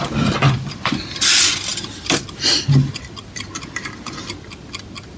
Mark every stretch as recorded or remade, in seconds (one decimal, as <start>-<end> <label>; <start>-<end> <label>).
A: 0.0-5.2 recorded